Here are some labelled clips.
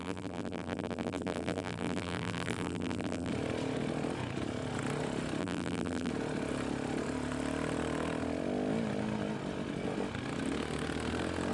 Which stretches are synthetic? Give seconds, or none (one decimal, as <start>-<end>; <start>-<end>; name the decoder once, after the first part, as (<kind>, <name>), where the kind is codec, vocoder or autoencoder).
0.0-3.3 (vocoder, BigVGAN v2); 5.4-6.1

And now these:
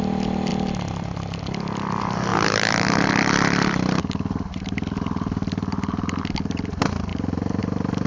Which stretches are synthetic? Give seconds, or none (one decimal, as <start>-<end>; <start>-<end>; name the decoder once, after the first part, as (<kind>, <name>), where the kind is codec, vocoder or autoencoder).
2.3-6.2 (vocoder, BigVGAN v2)

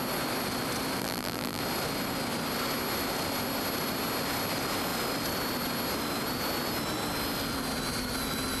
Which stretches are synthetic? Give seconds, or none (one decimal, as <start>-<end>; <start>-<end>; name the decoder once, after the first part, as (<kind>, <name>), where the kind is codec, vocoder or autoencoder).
1.0-1.6 (vocoder, BigVGAN v2)

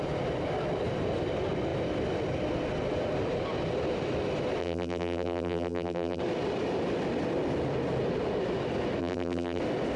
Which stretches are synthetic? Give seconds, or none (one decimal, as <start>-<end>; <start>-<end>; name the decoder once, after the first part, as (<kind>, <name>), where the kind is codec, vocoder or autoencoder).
4.6-6.2 (vocoder, BigVGAN v2); 9.0-9.6

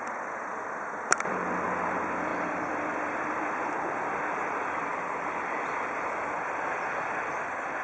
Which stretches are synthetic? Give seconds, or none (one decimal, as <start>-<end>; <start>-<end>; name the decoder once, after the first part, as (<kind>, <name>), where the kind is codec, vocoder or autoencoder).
0.0-2.3 (vocoder, BigVGAN v2); 2.9-7.8